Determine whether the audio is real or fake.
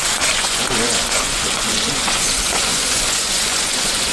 fake